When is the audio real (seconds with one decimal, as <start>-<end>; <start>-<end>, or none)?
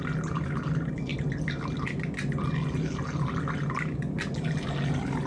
0.0-5.3